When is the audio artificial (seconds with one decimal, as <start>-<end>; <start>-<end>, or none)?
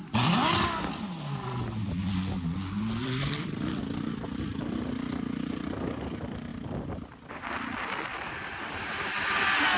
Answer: 3.0-3.8; 6.5-7.4; 8.1-9.0